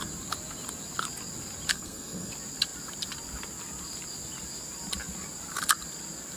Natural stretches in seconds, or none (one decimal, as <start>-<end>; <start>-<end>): 0.0-1.7; 2.3-6.4